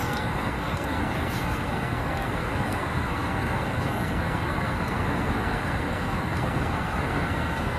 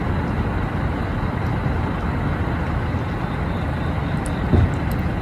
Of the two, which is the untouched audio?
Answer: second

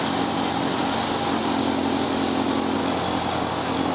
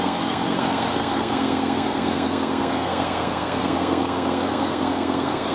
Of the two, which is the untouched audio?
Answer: first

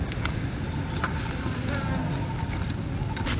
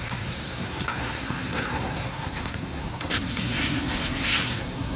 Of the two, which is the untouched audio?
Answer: first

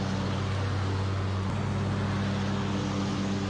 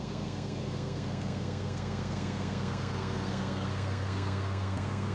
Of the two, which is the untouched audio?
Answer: first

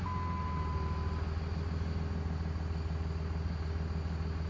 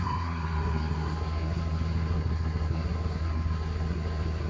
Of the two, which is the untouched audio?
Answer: first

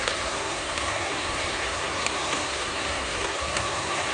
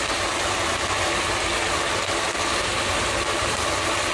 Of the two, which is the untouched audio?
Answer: second